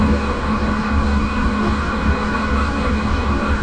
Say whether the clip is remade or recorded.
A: remade